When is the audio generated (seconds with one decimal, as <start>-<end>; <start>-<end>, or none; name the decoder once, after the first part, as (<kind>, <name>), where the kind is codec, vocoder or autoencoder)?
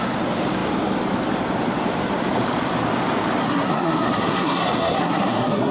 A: 3.4-5.7 (codec, SNAC)